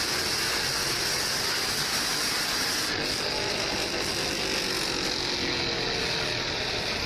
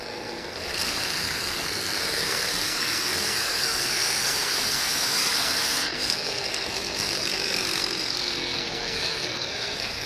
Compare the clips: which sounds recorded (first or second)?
first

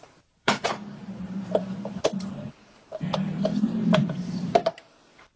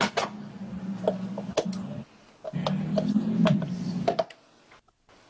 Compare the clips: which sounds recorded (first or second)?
second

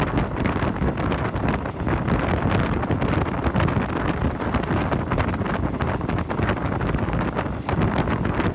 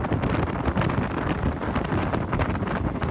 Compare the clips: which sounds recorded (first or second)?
first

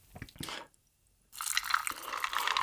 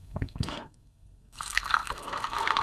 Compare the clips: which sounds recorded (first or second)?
first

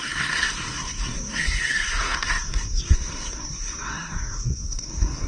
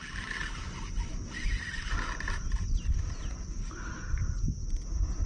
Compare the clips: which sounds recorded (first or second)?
second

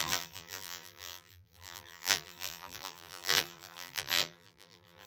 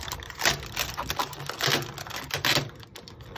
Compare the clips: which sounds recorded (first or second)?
second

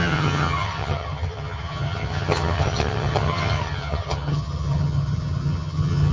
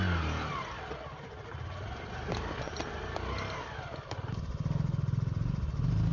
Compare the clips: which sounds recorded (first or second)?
second